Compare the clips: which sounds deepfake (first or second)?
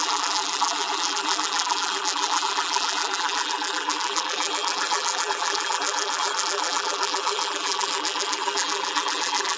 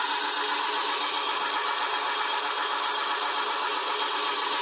first